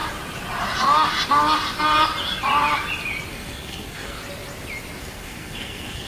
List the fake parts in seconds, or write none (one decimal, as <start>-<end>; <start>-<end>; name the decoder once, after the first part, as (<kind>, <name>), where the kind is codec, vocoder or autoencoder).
3.3-4.2 (codec, SNAC); 5.0-6.1